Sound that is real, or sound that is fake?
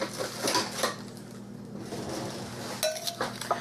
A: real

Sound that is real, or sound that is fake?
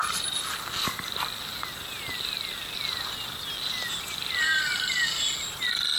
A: real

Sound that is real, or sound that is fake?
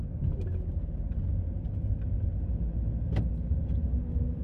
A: real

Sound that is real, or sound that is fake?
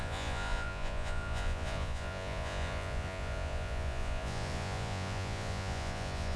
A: fake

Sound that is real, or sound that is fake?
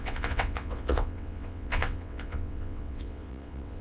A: fake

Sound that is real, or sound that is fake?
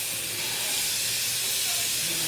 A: real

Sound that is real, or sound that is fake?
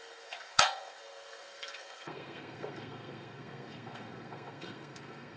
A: fake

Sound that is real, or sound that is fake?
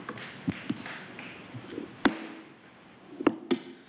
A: real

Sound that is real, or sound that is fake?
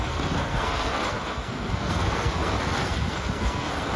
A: fake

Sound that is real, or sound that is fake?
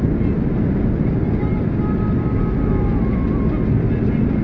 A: real